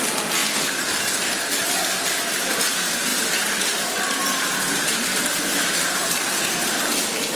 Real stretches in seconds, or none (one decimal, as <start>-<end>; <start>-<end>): 0.0-3.1